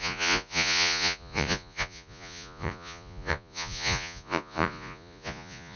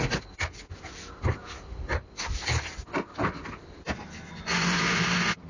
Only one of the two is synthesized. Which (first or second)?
first